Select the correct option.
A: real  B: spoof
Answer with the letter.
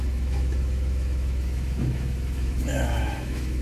B